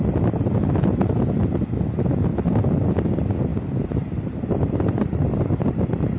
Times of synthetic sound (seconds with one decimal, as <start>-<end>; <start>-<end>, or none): 3.5-5.5